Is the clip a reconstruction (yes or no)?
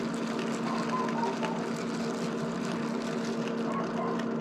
no